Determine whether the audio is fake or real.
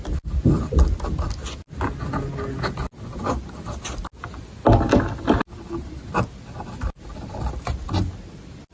real